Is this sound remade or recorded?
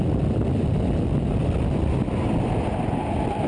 recorded